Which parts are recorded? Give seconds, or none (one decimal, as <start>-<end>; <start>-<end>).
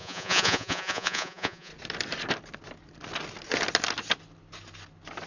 1.7-5.3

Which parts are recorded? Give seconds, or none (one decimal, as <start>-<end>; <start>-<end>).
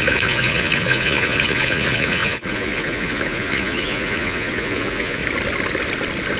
5.2-6.4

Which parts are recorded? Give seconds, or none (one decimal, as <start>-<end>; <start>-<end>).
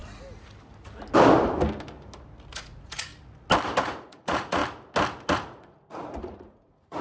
0.0-2.5; 3.1-3.8; 4.6-5.3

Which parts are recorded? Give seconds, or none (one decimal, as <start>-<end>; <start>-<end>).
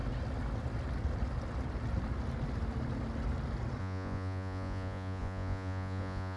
0.0-3.8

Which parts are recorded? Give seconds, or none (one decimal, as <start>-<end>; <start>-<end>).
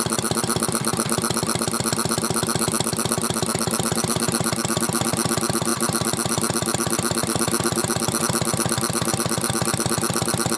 0.0-10.6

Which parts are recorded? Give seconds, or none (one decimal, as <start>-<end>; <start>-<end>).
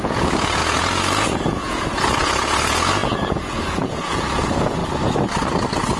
4.8-6.0